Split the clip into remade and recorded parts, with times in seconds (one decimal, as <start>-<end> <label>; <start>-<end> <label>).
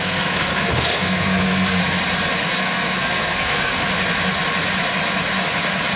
0.0-1.8 remade; 1.8-2.5 recorded; 2.5-3.8 remade; 3.8-6.0 recorded